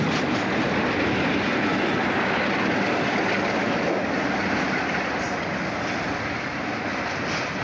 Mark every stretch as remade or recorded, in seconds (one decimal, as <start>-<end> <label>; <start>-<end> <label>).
0.0-3.6 recorded; 3.6-4.1 remade; 4.1-7.6 recorded